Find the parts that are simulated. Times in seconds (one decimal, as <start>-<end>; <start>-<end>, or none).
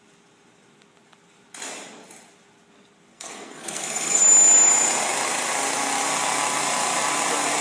3.1-4.2